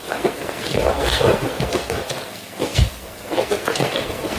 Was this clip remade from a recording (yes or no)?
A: yes